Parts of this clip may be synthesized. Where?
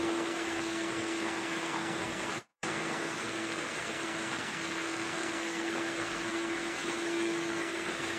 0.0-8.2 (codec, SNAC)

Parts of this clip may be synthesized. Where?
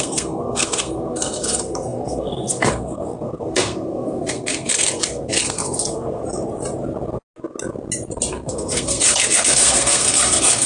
0.0-6.2 (codec, SNAC); 8.3-10.7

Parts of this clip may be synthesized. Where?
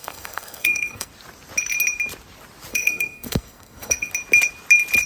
0.0-1.1 (codec, SNAC); 2.7-4.1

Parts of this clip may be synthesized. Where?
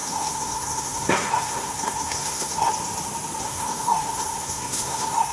0.0-2.7 (codec, SNAC); 3.4-5.3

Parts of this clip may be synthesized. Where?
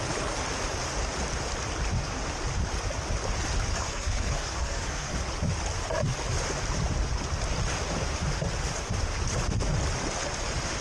3.7-5.1 (codec, SNAC)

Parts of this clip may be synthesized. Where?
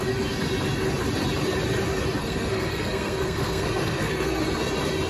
2.2-4.4 (codec, SNAC)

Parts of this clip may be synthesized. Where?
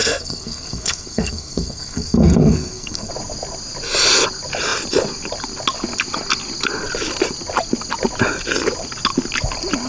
0.0-3.1 (codec, SNAC)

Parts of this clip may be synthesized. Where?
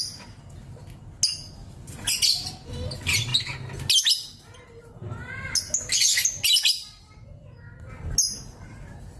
none